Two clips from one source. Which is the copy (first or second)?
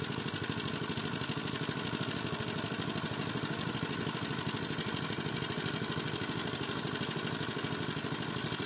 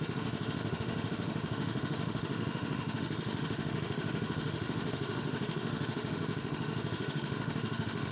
second